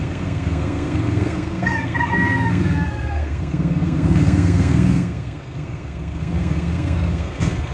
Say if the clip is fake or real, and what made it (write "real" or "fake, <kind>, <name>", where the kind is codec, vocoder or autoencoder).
fake, codec, SNAC